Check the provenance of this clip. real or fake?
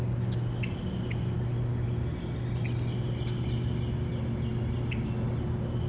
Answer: real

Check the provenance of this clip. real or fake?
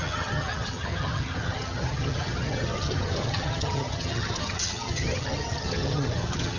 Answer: fake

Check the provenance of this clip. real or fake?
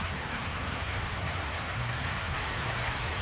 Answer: fake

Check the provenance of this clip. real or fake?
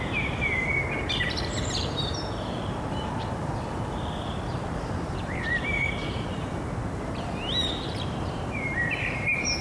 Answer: fake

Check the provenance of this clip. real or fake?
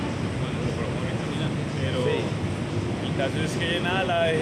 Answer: real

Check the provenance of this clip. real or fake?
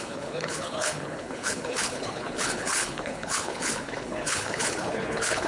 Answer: fake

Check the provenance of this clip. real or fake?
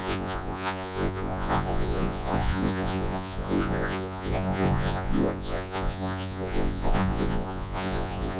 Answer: fake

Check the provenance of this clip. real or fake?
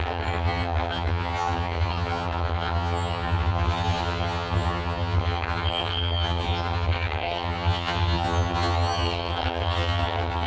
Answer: fake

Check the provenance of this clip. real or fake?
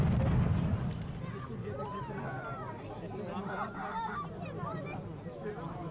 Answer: real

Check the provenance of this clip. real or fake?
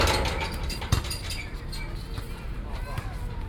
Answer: real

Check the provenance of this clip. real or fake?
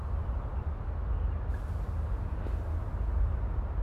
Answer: real